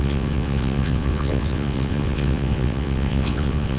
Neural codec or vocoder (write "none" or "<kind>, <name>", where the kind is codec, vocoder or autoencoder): vocoder, WaveNeXt